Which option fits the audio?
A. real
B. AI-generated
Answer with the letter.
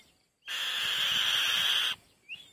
A